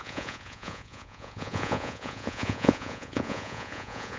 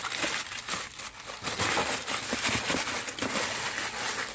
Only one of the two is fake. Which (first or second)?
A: first